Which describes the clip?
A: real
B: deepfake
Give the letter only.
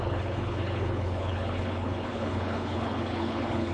B